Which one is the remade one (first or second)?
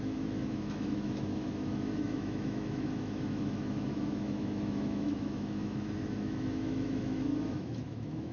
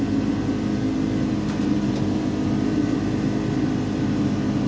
first